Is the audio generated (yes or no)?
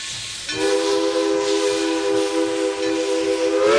no